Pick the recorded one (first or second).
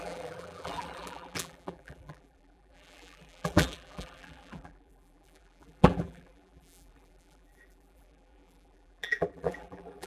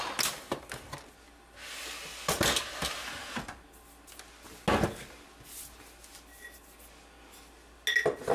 second